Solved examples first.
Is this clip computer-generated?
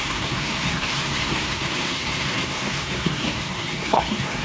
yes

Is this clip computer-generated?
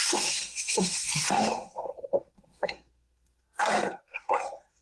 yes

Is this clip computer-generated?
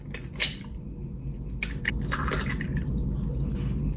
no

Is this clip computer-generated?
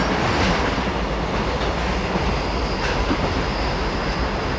no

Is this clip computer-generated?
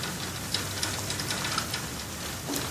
no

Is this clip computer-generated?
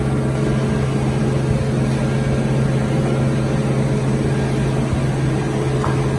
no